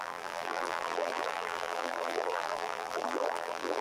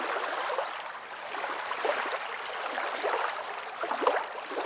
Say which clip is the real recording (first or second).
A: second